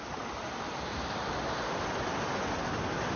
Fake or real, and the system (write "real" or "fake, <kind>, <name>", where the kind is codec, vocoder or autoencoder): real